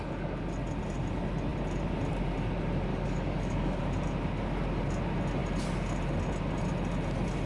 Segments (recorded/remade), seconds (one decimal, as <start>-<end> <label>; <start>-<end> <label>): 0.0-2.9 recorded; 2.9-3.8 remade; 3.8-7.5 recorded